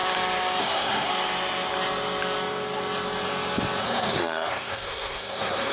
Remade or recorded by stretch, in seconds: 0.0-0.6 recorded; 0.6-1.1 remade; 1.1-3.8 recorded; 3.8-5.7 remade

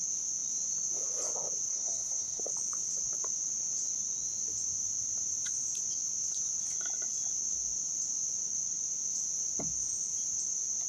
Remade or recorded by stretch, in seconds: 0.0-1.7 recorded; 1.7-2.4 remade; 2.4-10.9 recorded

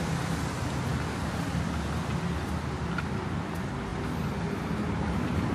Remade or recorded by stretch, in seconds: 0.0-5.5 recorded

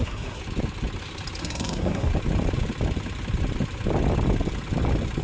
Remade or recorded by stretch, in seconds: 0.0-0.4 remade; 0.4-1.4 recorded; 1.4-2.1 remade; 2.1-5.2 recorded

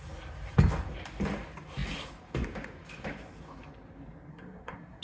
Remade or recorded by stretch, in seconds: 0.0-4.3 recorded; 4.3-5.0 remade

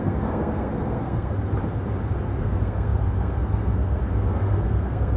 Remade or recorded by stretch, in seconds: 0.0-1.3 remade; 1.3-2.4 recorded; 2.4-5.2 remade

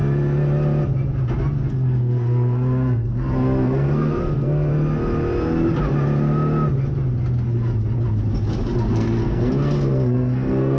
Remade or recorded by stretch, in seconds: 0.0-1.7 recorded; 1.7-4.7 remade; 4.7-8.9 recorded; 8.9-10.8 remade

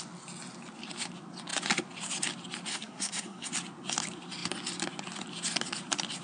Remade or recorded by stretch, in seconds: 0.0-2.7 recorded; 2.7-3.5 remade; 3.5-6.2 recorded